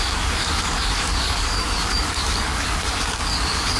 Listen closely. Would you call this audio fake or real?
fake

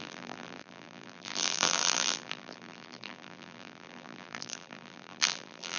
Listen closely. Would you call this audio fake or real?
fake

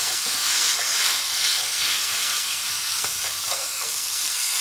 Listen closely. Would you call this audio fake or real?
fake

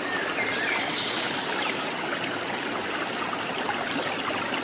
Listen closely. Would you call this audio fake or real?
real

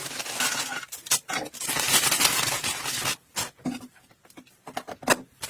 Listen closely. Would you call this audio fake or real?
real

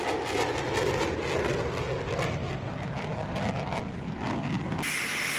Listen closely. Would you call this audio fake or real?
real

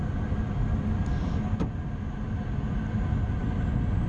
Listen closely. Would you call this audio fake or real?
real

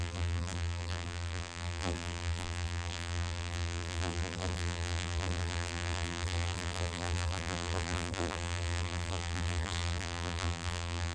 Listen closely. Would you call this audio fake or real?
fake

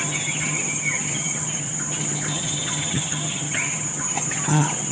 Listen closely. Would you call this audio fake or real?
fake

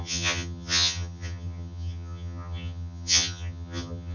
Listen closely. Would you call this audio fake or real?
fake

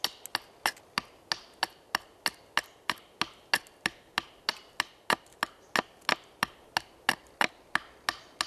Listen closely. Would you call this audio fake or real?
real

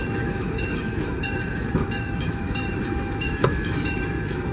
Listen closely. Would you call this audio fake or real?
fake